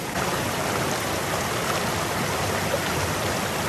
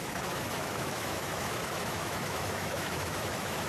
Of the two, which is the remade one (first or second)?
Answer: second